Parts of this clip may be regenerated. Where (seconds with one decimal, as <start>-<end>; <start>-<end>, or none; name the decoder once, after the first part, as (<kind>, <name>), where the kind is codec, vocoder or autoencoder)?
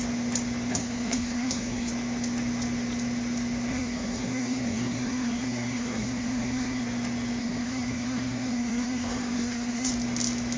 0.7-1.9 (codec, SNAC); 3.7-6.8; 7.4-9.9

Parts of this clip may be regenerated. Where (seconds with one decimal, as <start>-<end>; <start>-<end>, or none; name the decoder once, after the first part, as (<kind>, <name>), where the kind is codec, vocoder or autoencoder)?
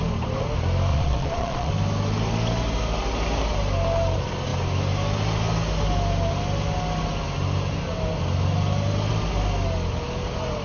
0.9-1.7 (vocoder, Vocos)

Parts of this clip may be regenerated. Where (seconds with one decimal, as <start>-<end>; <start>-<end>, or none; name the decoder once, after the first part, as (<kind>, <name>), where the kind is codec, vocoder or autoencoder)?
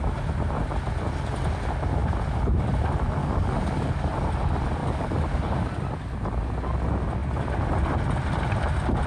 3.2-4.1 (codec, DAC); 4.8-5.5